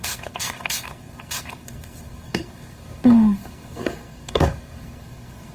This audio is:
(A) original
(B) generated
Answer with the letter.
B